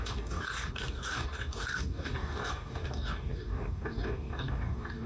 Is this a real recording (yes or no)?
no